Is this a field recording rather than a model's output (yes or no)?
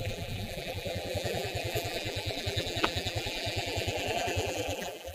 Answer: no